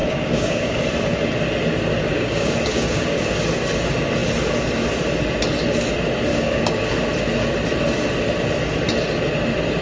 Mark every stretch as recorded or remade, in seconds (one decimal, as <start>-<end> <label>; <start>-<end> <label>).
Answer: 0.0-0.8 remade; 0.8-2.1 recorded; 2.1-3.4 remade; 3.4-6.3 recorded; 6.3-6.9 remade; 6.9-9.8 recorded